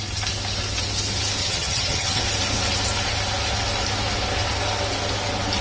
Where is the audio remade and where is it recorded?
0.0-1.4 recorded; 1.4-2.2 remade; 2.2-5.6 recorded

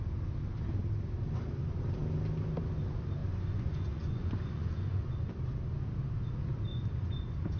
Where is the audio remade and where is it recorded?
0.0-3.2 recorded; 3.2-5.3 remade; 5.3-6.7 recorded; 6.7-7.6 remade

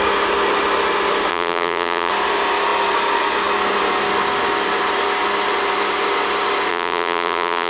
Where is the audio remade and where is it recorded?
0.0-1.3 recorded; 1.3-2.1 remade; 2.1-6.7 recorded; 6.7-7.7 remade

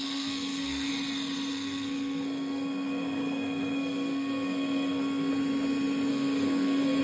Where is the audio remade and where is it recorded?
0.0-0.9 remade; 0.9-1.5 recorded; 1.5-5.3 remade; 5.3-6.1 recorded; 6.1-7.0 remade

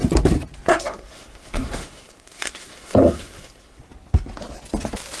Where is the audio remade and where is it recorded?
0.0-0.7 recorded; 0.7-3.8 remade; 3.8-5.2 recorded

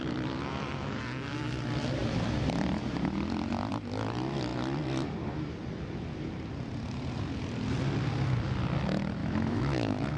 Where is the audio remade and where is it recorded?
0.0-0.5 recorded; 0.5-1.0 remade; 1.0-9.2 recorded; 9.2-10.2 remade

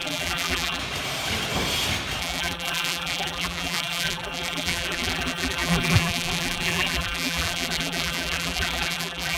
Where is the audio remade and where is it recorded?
0.0-0.8 remade; 0.8-2.2 recorded; 2.2-9.4 remade